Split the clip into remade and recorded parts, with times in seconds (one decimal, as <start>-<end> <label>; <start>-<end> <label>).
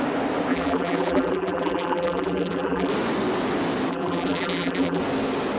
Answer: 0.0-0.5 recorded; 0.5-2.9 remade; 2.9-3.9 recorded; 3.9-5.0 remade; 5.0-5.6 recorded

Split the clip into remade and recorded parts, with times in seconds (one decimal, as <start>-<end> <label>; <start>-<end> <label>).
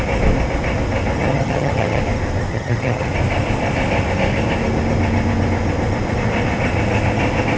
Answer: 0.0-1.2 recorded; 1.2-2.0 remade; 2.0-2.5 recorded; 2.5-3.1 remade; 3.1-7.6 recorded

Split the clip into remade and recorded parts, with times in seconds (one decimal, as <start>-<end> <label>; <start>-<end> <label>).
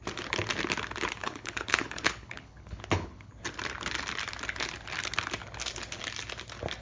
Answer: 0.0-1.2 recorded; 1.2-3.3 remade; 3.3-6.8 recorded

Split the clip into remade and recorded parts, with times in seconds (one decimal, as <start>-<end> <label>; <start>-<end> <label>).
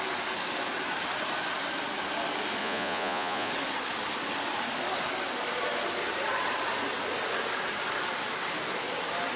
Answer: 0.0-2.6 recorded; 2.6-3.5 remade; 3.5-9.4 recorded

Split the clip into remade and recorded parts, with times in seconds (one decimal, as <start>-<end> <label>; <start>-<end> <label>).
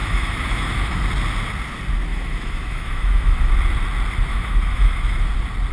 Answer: 0.0-1.0 remade; 1.0-2.1 recorded; 2.1-3.5 remade; 3.5-4.3 recorded; 4.3-5.2 remade; 5.2-5.7 recorded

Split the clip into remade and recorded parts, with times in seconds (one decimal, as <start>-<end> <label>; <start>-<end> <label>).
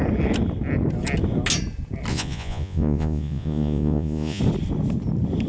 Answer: 0.0-2.1 recorded; 2.1-4.4 remade; 4.4-5.5 recorded